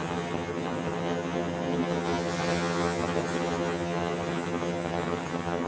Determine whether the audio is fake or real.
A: fake